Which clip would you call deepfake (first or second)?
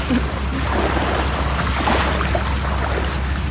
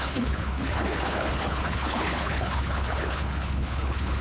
second